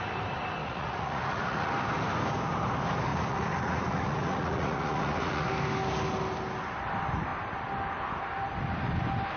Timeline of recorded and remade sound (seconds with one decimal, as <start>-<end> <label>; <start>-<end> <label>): 0.0-0.6 recorded; 0.6-1.7 remade; 1.7-3.1 recorded; 3.1-5.5 remade; 5.5-9.4 recorded